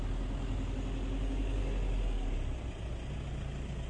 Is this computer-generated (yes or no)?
no